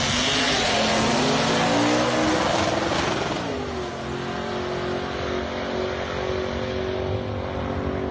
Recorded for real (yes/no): yes